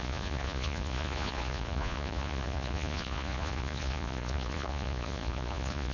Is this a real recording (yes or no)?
no